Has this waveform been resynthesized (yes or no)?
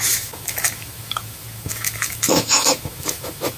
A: yes